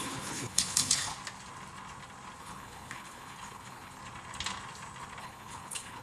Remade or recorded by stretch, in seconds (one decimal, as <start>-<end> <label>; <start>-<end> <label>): 0.0-1.1 remade; 1.1-2.4 recorded; 2.4-4.0 remade; 4.0-5.2 recorded; 5.2-6.0 remade